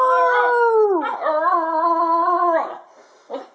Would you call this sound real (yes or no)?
yes